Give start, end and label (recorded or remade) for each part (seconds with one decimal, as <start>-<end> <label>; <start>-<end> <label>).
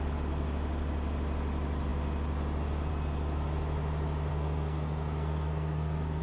0.0-4.3 recorded; 4.3-6.2 remade